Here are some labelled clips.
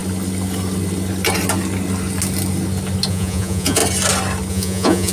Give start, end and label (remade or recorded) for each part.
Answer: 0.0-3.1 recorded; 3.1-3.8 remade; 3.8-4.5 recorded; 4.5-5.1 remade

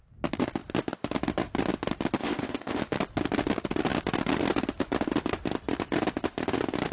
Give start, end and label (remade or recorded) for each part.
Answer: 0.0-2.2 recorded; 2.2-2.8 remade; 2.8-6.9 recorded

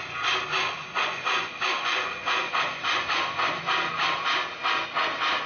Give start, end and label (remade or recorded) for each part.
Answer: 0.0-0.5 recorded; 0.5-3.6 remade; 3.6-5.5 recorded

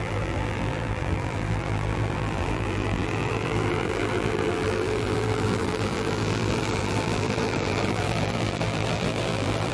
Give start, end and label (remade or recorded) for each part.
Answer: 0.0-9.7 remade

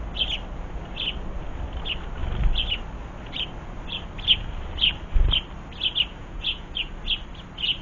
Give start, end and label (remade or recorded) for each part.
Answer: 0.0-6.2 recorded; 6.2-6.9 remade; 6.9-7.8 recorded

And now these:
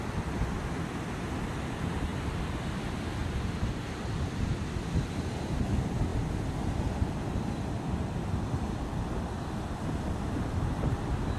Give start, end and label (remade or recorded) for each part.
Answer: 0.0-2.1 recorded; 2.1-2.7 remade; 2.7-3.2 recorded; 3.2-4.2 remade; 4.2-6.1 recorded; 6.1-7.6 remade; 7.6-11.4 recorded

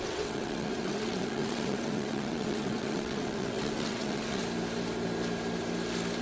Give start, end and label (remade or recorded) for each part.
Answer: 0.0-4.4 remade; 4.4-6.2 recorded